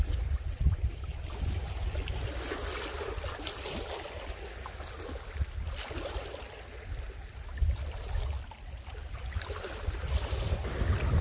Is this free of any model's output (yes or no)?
yes